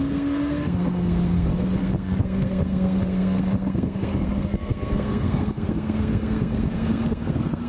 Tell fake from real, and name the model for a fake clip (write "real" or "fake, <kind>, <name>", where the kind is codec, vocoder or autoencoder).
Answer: fake, codec, SNAC